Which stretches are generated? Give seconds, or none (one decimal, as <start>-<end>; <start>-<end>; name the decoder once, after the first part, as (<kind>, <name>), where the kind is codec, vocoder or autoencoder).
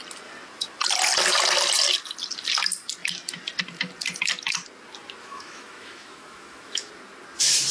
5.2-6.9 (autoencoder, DAC-VAE)